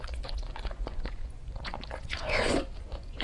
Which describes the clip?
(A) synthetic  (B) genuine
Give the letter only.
A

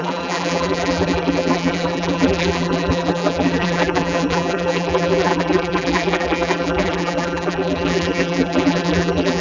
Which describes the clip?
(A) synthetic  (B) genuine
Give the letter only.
A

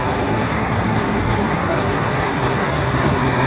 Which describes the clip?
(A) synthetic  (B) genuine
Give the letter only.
A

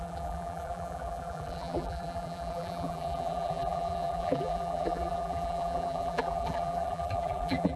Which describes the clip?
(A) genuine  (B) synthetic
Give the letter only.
B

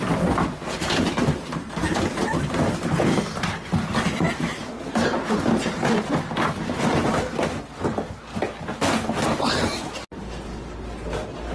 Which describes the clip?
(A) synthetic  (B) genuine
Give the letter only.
B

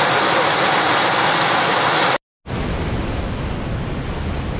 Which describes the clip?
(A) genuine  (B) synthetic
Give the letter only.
A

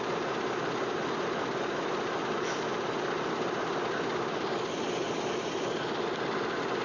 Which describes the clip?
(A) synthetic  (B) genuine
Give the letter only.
B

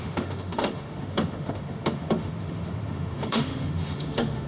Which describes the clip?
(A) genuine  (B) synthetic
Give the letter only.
B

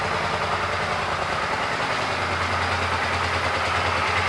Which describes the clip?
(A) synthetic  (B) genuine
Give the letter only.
B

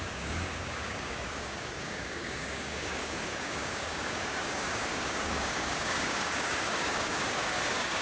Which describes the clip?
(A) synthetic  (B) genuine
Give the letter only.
A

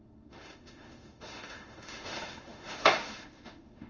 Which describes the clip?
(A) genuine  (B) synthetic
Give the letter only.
B